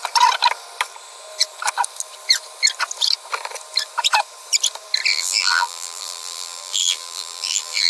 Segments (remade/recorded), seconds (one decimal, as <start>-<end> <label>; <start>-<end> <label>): 0.0-5.1 recorded; 5.1-7.9 remade